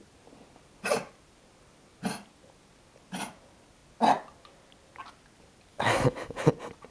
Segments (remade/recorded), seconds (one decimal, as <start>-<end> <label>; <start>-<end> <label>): 0.0-5.7 recorded; 5.7-6.5 remade; 6.5-6.9 recorded